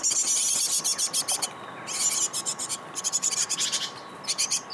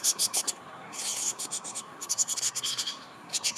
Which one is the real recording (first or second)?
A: first